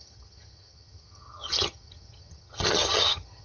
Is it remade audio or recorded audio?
remade